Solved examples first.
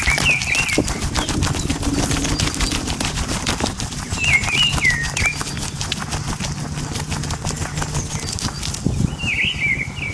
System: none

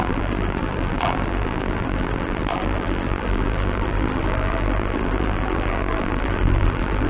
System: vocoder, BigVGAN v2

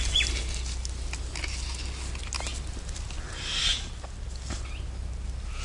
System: none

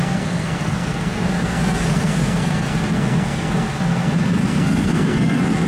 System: codec, SNAC